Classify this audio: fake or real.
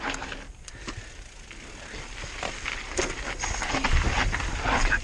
real